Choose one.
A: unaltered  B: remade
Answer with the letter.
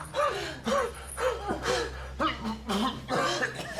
A